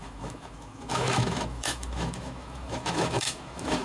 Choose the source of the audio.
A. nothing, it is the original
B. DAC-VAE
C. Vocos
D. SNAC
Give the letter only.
B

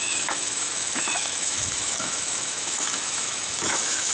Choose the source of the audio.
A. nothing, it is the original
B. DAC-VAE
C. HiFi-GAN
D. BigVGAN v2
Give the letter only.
B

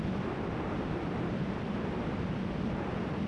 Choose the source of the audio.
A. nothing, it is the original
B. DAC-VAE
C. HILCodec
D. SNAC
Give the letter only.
A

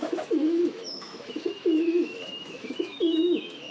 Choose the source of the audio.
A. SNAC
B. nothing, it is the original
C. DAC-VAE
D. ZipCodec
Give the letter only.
C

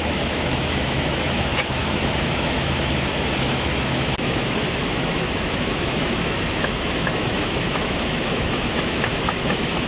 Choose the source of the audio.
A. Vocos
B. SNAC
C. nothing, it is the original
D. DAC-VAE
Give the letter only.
D